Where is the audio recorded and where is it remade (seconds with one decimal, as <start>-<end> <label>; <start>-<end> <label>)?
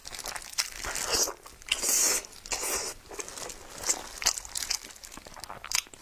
0.0-6.0 recorded